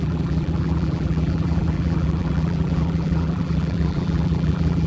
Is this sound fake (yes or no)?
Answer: yes